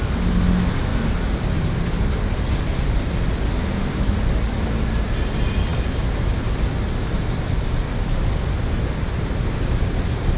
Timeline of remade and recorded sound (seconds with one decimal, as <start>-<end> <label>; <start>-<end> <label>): 0.0-10.4 recorded